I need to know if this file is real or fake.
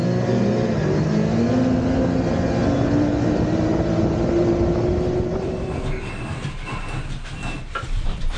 real